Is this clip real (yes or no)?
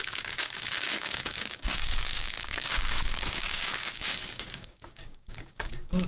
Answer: no